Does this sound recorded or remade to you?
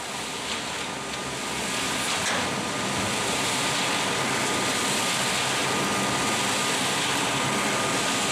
recorded